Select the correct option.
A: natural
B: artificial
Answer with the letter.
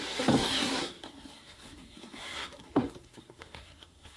B